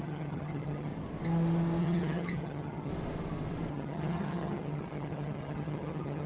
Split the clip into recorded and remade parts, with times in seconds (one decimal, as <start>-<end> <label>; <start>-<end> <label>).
0.0-0.9 remade; 0.9-1.8 recorded; 1.8-2.9 remade; 2.9-3.7 recorded; 3.7-6.3 remade